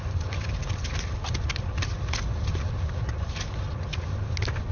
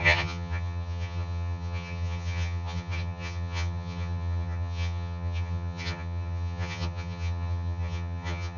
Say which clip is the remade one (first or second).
second